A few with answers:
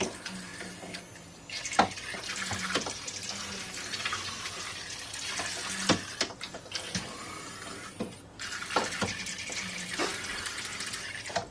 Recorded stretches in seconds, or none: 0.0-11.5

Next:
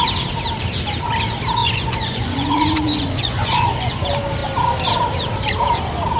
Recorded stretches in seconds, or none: 0.0-1.6; 4.0-6.2

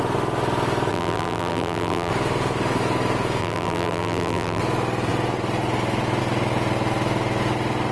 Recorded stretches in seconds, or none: 0.0-0.9; 2.1-3.4; 4.6-7.9

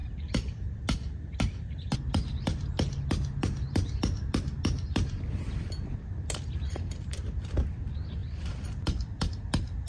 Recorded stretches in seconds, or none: 0.0-9.9

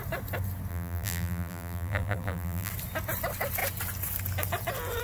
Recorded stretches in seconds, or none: 0.0-0.7; 2.7-5.0

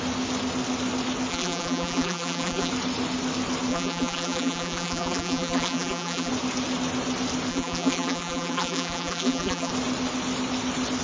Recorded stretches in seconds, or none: 0.0-1.3; 2.7-3.7; 6.3-7.5; 9.7-11.0